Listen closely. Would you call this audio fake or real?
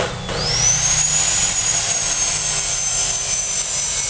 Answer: real